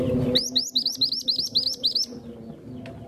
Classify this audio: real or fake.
real